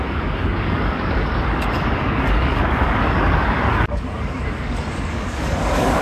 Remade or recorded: remade